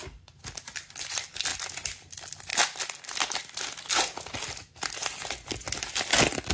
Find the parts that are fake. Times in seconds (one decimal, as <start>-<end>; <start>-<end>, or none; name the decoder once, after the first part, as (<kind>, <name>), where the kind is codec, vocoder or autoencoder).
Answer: none